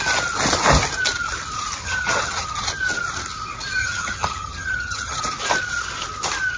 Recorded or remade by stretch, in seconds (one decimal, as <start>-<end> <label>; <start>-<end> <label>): 0.0-1.8 recorded; 1.8-2.7 remade; 2.7-3.8 recorded; 3.8-5.2 remade; 5.2-6.6 recorded